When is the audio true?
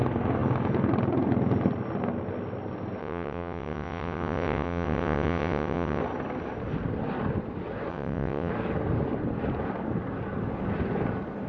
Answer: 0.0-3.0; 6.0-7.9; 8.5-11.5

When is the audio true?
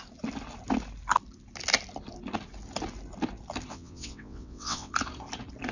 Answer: 0.0-3.7; 4.9-5.7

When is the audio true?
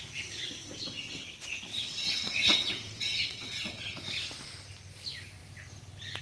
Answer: 0.0-1.7; 4.0-6.2